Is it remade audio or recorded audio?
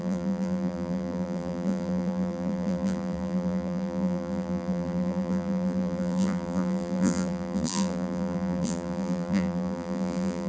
remade